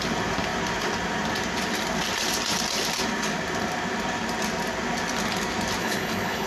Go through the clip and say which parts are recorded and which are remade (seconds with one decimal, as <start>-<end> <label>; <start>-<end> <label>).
0.0-5.8 recorded; 5.8-6.5 remade